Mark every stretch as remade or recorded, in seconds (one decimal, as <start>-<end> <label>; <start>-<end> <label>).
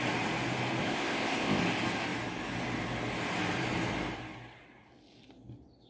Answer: 0.0-0.8 recorded; 0.8-1.6 remade; 1.6-5.9 recorded